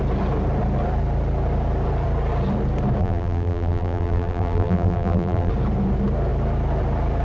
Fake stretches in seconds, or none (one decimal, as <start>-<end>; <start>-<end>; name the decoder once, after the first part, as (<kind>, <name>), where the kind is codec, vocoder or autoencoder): 3.0-5.5 (vocoder, BigVGAN v2)